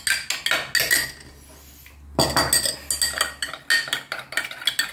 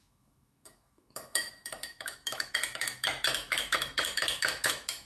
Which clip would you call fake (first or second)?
second